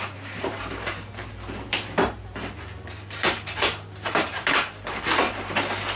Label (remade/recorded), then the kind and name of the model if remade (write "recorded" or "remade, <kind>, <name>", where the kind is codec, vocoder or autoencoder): remade, vocoder, BigVGAN v2